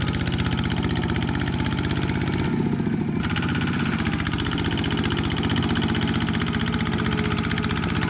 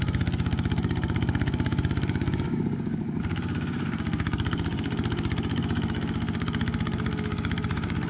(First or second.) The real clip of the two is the first